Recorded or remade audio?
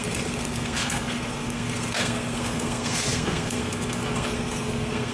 remade